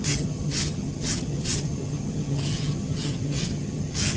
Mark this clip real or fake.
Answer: fake